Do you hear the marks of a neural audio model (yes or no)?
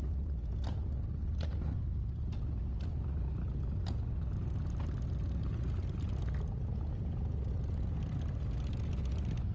no